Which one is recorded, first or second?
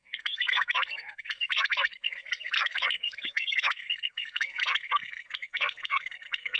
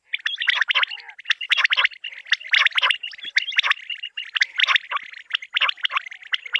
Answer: second